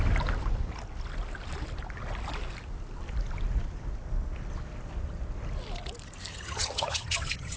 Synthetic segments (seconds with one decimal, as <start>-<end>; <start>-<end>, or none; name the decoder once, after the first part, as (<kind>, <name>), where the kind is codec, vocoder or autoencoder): 6.3-7.6 (vocoder, HiFi-GAN)